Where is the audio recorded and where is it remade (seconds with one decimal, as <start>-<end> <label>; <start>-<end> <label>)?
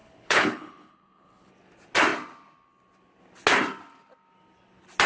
0.0-1.5 remade; 1.5-5.1 recorded